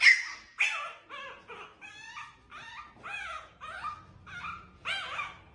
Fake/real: real